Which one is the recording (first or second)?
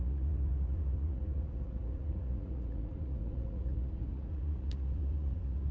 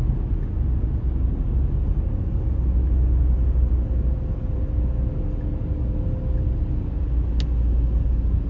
second